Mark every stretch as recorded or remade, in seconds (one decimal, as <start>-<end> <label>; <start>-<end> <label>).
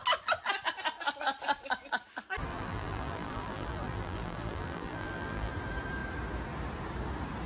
0.0-2.5 recorded; 2.5-5.5 remade; 5.5-7.5 recorded